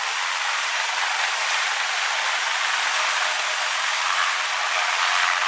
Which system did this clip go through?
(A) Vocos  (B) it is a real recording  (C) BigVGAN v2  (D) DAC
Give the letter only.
B